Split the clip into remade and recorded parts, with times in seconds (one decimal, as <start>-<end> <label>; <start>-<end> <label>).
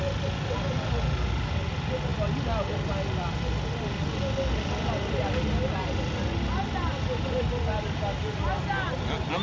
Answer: 0.0-9.4 recorded